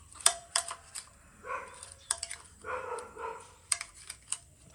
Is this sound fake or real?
fake